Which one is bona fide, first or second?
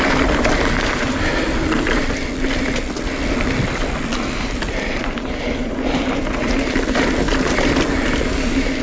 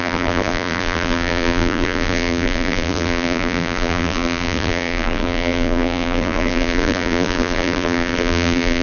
first